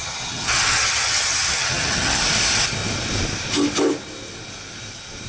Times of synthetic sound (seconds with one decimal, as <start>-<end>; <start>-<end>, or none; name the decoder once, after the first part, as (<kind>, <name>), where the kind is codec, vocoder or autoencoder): 0.0-2.2 (vocoder, HiFi-GAN)